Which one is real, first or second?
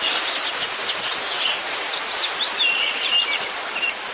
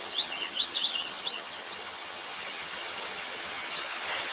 first